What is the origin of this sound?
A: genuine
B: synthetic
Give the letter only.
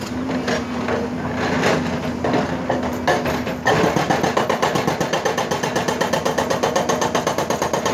A